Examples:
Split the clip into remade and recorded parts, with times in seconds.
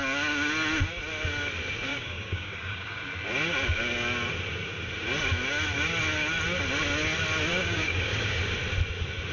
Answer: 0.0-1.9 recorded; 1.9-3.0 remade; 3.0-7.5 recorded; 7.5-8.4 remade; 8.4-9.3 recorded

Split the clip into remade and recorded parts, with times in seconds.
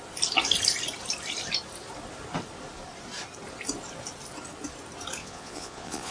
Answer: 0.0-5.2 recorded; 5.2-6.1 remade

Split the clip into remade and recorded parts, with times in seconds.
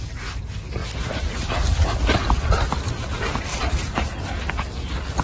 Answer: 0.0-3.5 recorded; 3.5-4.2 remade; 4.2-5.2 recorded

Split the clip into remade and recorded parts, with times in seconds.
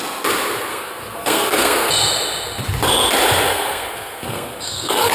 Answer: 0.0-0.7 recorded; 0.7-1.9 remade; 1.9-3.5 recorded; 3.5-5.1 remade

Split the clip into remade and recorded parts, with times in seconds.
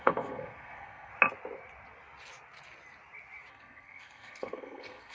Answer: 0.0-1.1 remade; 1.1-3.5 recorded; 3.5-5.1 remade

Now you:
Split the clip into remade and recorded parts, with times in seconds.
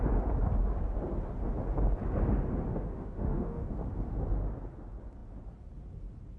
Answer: 0.0-2.7 recorded; 2.7-3.7 remade; 3.7-6.4 recorded